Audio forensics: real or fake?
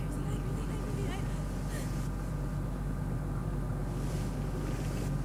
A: real